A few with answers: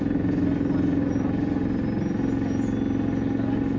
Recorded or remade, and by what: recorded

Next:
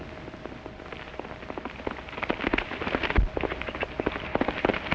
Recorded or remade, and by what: recorded